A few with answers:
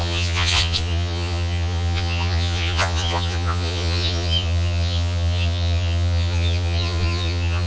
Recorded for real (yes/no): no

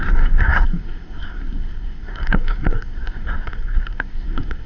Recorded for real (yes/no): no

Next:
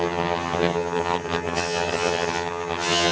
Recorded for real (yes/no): no